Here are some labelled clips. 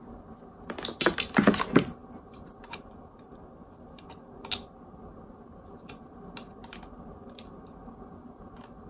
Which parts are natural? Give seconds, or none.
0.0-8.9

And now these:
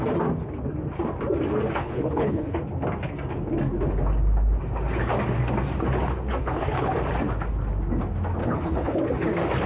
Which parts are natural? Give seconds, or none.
0.0-1.8; 2.6-6.4; 6.9-8.4; 9.0-9.7

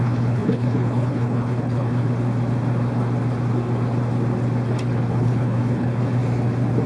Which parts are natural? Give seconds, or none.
2.0-5.1; 6.2-6.9

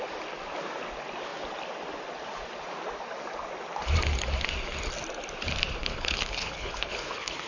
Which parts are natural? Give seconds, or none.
0.0-5.8

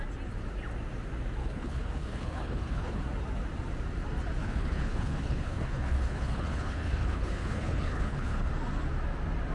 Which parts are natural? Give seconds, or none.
0.0-1.4; 3.0-4.4; 8.5-9.5

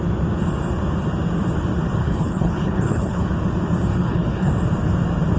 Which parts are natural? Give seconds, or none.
0.0-2.0; 3.3-3.9; 4.5-5.4